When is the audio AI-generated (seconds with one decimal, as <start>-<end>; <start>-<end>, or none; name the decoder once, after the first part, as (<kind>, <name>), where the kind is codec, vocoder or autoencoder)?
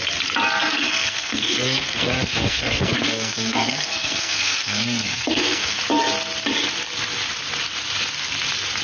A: 0.6-5.8 (codec, SNAC)